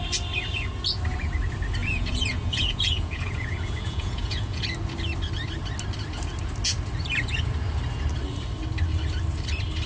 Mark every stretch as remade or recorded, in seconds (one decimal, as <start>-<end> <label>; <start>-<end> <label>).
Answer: 0.0-1.8 recorded; 1.8-4.6 remade; 4.6-9.9 recorded